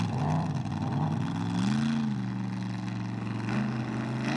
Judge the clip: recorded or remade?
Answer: recorded